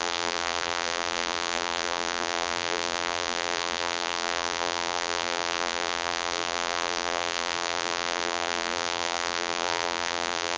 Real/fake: fake